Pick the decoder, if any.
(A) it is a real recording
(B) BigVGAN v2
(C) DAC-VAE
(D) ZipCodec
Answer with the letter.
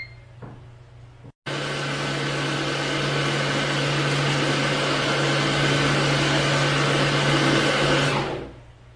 A